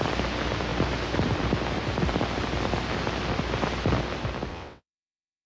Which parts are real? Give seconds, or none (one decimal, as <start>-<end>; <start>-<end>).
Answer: 0.0-4.5